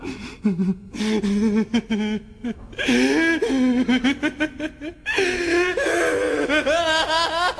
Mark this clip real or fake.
real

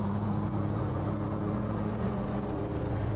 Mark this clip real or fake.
fake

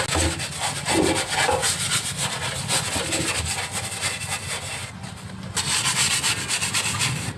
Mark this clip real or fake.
real